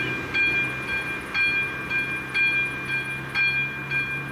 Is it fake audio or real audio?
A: real